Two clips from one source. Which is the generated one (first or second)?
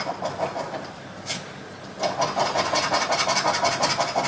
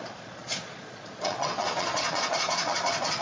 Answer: second